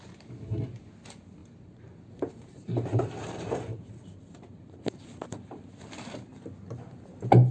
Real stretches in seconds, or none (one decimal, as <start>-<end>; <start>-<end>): 0.0-1.4; 5.6-7.5